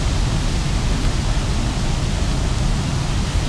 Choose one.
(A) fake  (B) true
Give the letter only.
B